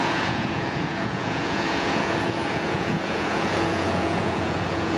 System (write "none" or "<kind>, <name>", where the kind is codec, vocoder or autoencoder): vocoder, Vocos